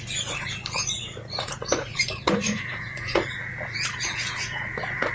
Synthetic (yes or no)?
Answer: yes